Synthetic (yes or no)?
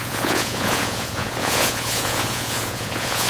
yes